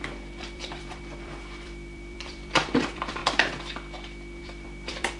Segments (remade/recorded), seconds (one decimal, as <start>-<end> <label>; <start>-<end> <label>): 0.0-3.2 remade; 3.2-4.4 recorded; 4.4-5.2 remade

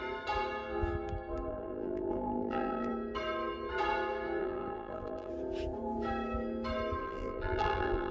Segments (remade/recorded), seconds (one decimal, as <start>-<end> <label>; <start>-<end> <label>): 0.0-1.5 recorded; 1.5-2.9 remade; 2.9-4.4 recorded; 4.4-5.3 remade; 5.3-7.0 recorded; 7.0-8.1 remade

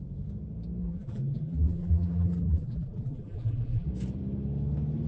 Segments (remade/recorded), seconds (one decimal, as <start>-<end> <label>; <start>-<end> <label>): 0.0-0.8 recorded; 0.8-3.9 remade; 3.9-5.1 recorded

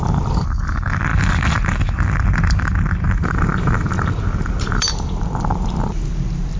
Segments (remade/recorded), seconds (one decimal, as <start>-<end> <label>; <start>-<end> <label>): 0.0-6.6 recorded

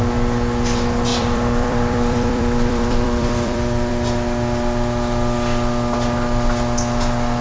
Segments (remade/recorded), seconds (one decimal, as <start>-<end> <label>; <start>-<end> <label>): 0.0-1.1 recorded; 1.1-3.9 remade; 3.9-7.4 recorded

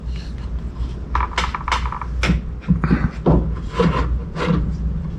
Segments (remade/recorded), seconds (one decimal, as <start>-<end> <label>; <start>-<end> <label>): 0.0-4.2 recorded; 4.2-5.2 remade

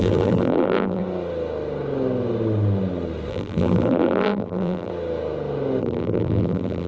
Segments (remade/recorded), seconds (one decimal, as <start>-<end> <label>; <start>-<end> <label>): 0.0-1.0 remade; 1.0-3.3 recorded; 3.3-4.9 remade; 4.9-5.8 recorded; 5.8-6.9 remade